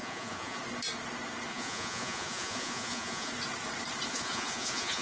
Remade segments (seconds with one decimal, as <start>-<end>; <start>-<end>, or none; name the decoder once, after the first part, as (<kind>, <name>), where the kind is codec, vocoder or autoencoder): 0.0-0.6 (vocoder, Vocos); 1.5-3.3; 4.1-5.0